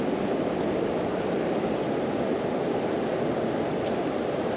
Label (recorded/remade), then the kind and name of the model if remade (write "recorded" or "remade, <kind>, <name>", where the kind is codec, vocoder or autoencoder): remade, vocoder, BigVGAN v2